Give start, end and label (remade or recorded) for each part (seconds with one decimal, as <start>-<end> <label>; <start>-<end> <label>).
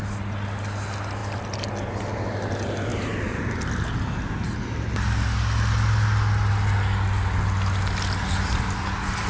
0.0-9.3 recorded